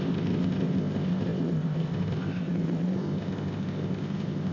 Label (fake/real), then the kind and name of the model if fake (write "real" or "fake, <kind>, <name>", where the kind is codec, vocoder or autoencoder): fake, codec, ZipCodec